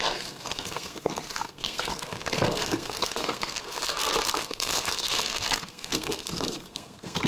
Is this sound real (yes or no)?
no